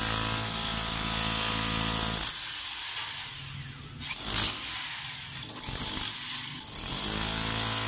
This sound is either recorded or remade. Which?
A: recorded